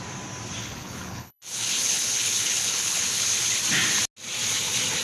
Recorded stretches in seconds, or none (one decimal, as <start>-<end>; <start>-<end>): 0.0-0.6; 3.6-5.0